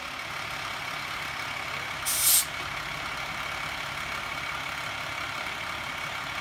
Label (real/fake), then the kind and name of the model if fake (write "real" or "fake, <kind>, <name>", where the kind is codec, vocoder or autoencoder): real